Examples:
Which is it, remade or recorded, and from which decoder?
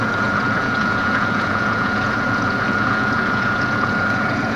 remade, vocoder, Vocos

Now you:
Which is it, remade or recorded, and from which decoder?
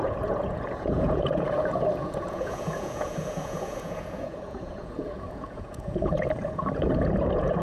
remade, vocoder, Vocos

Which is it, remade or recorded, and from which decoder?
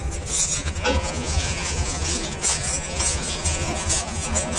remade, vocoder, Vocos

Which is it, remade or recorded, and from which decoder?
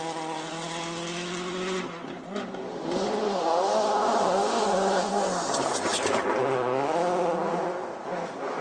recorded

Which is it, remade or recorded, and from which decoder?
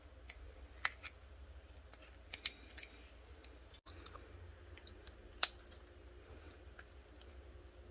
recorded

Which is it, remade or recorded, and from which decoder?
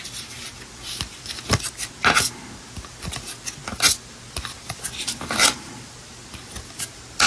recorded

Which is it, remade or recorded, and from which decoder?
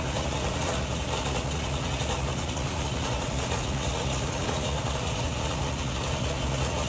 remade, vocoder, Vocos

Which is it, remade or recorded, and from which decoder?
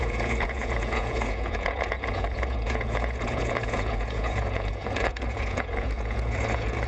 remade, vocoder, Vocos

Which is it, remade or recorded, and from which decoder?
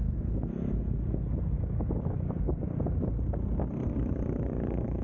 recorded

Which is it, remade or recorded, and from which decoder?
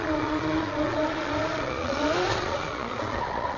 remade, vocoder, Vocos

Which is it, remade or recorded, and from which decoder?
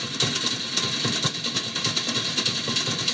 recorded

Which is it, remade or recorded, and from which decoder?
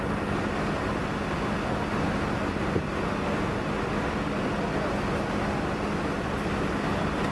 recorded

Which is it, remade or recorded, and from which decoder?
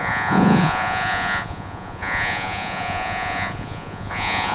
remade, vocoder, Vocos